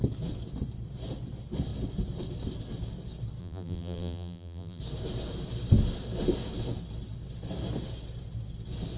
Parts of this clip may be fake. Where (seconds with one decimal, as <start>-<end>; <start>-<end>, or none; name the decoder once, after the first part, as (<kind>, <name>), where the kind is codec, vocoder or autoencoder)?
3.4-4.8 (vocoder, BigVGAN v2)